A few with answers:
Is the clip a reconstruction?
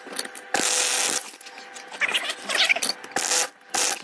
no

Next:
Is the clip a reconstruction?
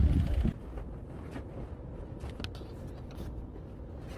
no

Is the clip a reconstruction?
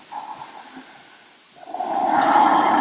no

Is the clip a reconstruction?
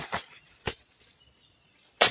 yes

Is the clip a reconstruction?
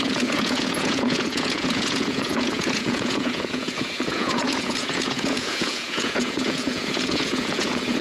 yes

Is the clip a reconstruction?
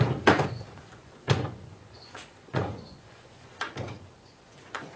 yes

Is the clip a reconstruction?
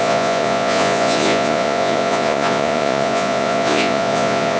yes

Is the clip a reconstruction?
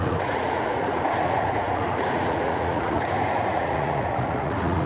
yes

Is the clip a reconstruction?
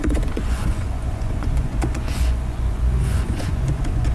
yes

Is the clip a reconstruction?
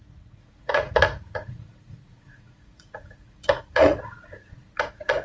yes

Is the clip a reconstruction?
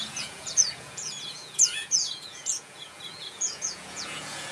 yes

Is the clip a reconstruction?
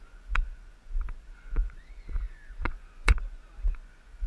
yes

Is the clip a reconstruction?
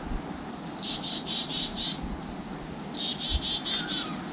no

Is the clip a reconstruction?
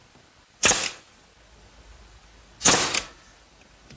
no